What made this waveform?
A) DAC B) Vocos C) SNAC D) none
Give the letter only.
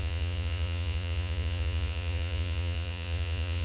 B